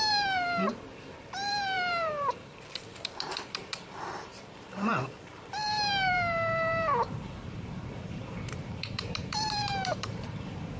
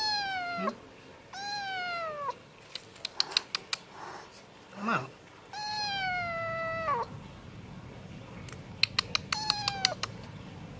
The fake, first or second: first